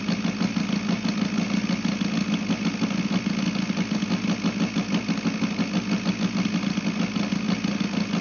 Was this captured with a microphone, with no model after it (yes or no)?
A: yes